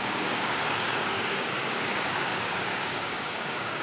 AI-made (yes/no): yes